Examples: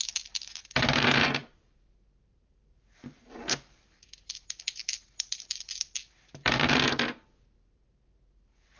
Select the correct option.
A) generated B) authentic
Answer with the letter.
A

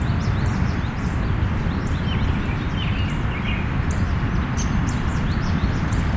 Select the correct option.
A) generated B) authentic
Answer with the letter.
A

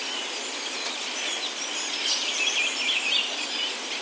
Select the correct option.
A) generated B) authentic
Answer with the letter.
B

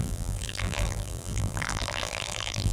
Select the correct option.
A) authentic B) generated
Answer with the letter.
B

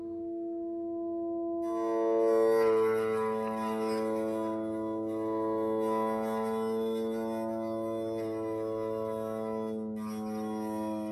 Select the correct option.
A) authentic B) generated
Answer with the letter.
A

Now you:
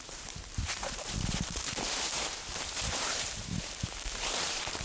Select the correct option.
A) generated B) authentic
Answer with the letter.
A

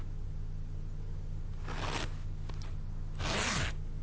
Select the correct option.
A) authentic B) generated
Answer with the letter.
A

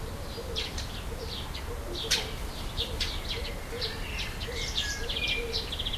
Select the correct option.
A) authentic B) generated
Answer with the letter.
B